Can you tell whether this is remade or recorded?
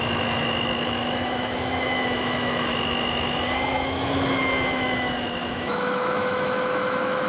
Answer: remade